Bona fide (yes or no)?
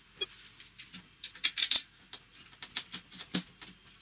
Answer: yes